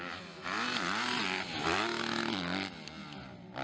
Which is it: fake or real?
real